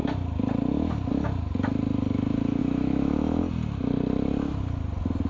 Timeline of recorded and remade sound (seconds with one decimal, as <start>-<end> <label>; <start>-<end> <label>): 0.0-2.6 recorded; 2.6-3.4 remade; 3.4-5.3 recorded